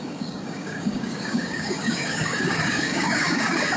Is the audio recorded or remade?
remade